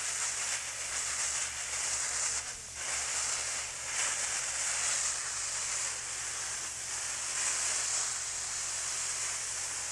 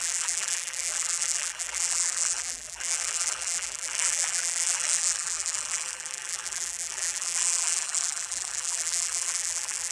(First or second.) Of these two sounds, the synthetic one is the second